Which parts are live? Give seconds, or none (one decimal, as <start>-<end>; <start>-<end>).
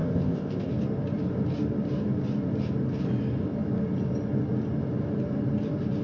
0.7-6.0